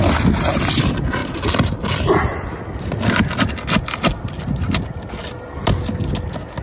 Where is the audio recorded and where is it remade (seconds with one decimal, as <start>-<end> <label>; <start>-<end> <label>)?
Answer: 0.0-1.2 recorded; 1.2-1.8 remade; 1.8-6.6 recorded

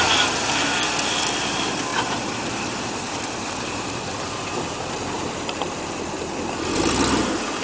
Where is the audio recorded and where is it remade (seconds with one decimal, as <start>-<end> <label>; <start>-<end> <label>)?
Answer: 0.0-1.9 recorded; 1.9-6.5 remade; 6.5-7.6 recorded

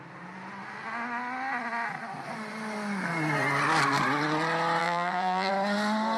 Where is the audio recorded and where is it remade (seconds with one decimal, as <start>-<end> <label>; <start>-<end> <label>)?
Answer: 0.0-4.8 recorded; 4.8-5.5 remade; 5.5-6.2 recorded